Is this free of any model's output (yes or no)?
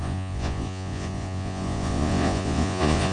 no